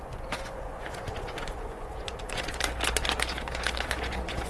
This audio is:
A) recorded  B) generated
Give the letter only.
B